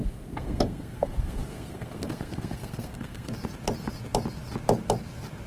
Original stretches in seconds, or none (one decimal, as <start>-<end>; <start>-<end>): 3.3-5.5